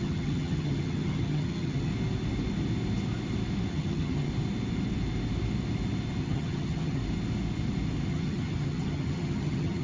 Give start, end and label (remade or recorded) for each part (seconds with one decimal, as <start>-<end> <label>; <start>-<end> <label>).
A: 0.0-1.9 remade; 1.9-3.7 recorded; 3.7-4.3 remade; 4.3-6.2 recorded; 6.2-7.0 remade; 7.0-8.1 recorded; 8.1-9.8 remade